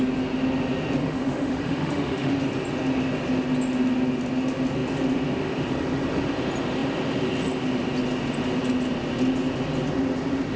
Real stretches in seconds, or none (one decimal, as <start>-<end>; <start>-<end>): 0.0-1.0; 2.3-10.6